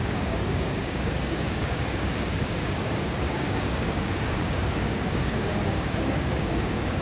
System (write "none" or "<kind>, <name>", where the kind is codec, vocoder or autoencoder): codec, DAC